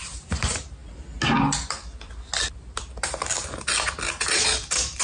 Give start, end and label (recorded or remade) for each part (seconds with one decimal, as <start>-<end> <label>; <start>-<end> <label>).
0.0-5.0 recorded